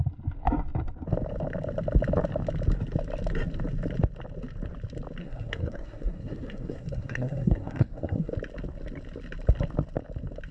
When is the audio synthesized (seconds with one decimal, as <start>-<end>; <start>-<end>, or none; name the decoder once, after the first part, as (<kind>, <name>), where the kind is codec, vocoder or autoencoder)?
5.2-8.3 (codec, SNAC)